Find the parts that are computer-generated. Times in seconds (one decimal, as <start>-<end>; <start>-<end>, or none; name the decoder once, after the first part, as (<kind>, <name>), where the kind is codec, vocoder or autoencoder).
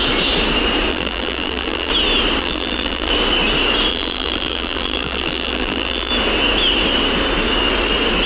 0.9-1.9 (vocoder, BigVGAN v2); 2.4-3.1; 3.9-6.1